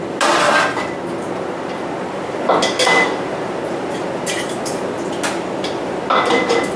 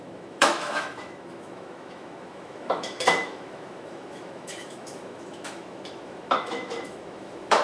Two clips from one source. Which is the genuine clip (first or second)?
first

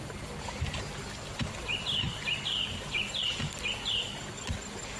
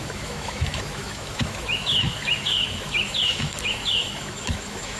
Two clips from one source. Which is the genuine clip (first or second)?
first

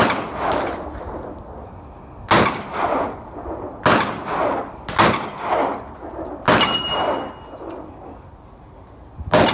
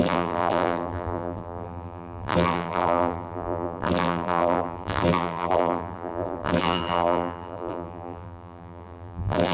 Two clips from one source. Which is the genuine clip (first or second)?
first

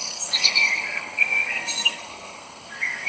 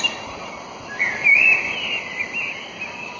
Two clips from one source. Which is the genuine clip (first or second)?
second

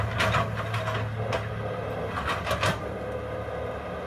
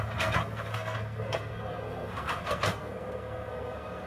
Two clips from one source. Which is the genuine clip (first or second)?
first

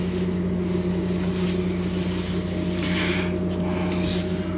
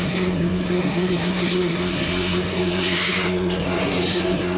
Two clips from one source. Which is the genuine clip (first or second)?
first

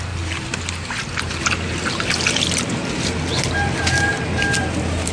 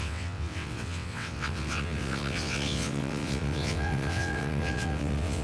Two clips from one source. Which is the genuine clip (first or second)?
first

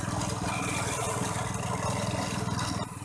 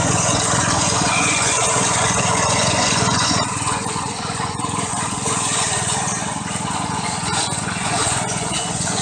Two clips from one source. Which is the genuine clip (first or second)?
first